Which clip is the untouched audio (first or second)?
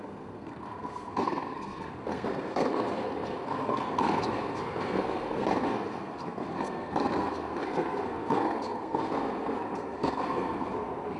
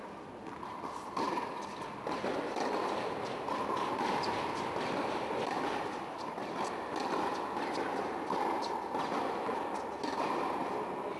second